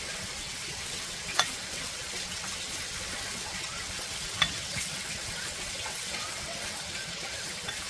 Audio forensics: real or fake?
fake